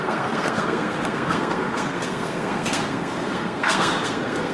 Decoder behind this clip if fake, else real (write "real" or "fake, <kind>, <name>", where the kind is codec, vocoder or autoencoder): fake, codec, SNAC